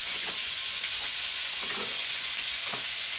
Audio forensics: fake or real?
fake